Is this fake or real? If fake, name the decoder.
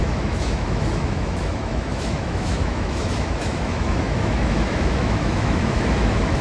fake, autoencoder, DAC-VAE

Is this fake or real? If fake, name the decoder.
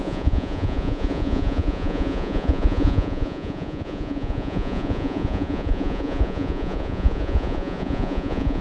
fake, vocoder, Vocos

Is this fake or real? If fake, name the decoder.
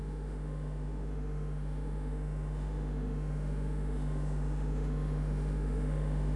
fake, autoencoder, DAC-VAE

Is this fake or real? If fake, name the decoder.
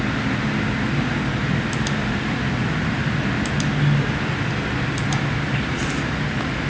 real